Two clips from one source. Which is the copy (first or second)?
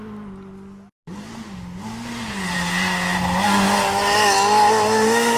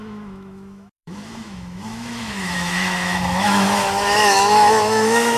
second